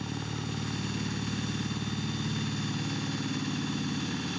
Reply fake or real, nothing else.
real